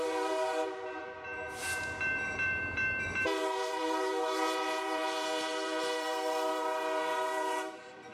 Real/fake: fake